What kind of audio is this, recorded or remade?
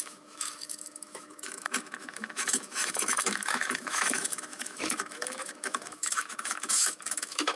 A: remade